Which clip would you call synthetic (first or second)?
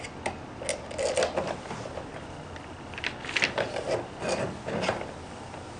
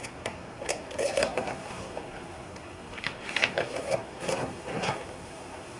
second